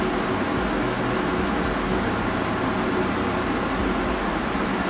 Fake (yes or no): no